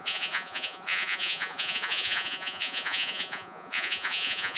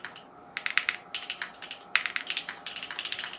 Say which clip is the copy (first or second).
first